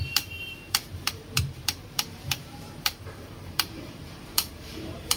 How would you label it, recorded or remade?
remade